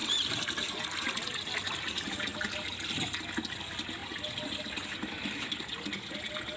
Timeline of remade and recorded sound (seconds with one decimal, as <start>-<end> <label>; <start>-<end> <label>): 0.0-1.0 remade; 1.0-6.6 recorded